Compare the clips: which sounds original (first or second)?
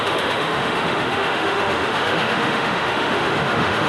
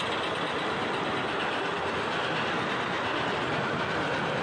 second